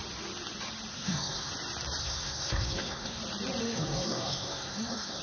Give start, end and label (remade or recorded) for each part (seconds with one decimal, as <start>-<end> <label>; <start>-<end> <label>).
0.0-0.9 recorded; 0.9-1.5 remade; 1.5-2.0 recorded; 2.0-3.2 remade; 3.2-3.6 recorded; 3.6-5.2 remade